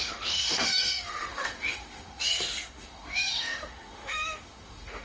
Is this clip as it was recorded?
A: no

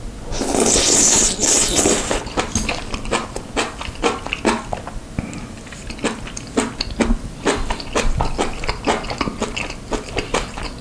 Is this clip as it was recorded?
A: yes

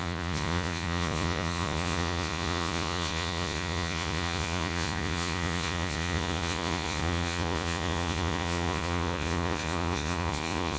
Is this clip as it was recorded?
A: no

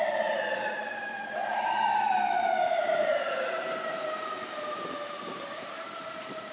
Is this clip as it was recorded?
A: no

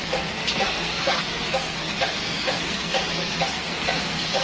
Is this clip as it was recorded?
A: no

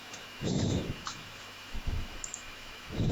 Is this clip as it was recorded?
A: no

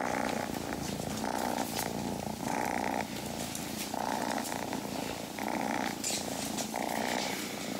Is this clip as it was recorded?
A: yes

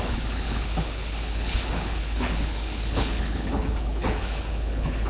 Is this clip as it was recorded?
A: no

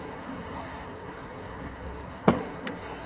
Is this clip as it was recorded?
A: no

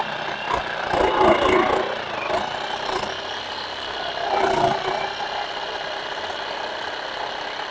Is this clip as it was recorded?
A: yes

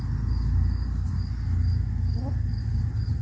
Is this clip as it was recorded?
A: yes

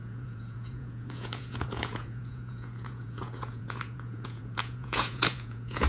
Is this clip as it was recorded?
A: no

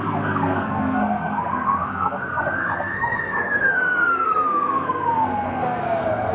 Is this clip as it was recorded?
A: no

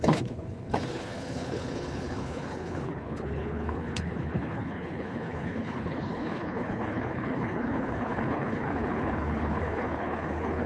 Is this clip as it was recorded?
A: no